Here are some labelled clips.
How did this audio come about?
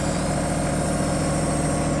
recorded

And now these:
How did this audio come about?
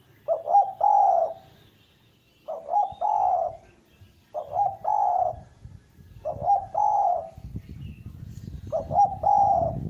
recorded